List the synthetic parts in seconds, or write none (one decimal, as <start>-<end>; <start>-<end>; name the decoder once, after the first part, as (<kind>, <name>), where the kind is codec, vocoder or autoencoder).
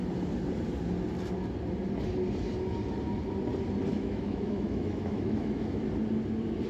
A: 3.9-5.8 (autoencoder, DAC-VAE)